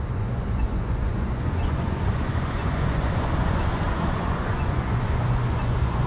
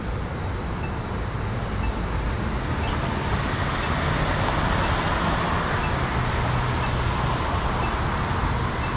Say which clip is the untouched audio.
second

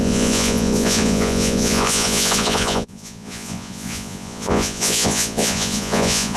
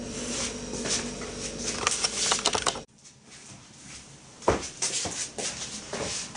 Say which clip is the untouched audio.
second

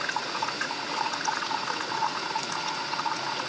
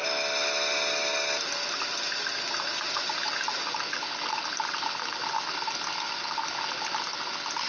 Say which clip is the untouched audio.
second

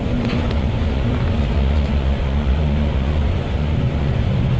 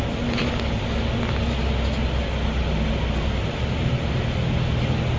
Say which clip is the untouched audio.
second